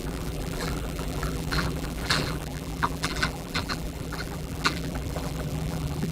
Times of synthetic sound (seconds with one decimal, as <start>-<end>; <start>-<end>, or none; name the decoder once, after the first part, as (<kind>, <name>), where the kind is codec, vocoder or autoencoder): 0.0-6.1 (vocoder, BigVGAN v2)